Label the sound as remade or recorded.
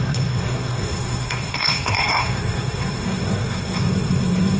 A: remade